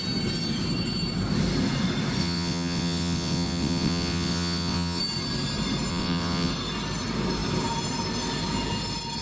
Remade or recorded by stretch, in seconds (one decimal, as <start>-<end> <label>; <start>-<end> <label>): 0.0-2.2 recorded; 2.2-5.0 remade; 5.0-5.9 recorded; 5.9-6.5 remade; 6.5-9.2 recorded